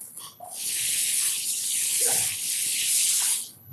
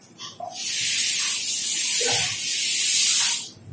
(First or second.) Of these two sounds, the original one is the second